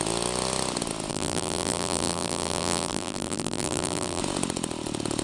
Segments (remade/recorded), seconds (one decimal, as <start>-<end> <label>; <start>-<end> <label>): 0.0-1.1 recorded; 1.1-4.2 remade; 4.2-5.2 recorded